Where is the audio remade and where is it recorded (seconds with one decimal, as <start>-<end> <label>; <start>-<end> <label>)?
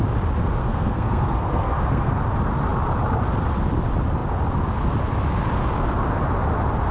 0.0-0.6 recorded; 0.6-2.1 remade; 2.1-6.9 recorded